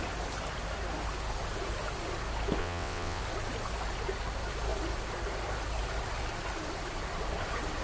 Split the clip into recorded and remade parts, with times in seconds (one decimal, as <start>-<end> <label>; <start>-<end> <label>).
0.0-2.6 recorded; 2.6-3.2 remade; 3.2-7.8 recorded